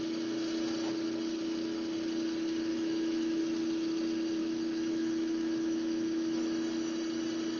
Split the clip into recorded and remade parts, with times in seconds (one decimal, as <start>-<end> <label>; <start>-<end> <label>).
0.0-2.7 recorded; 2.7-3.4 remade; 3.4-4.4 recorded; 4.4-7.0 remade; 7.0-7.6 recorded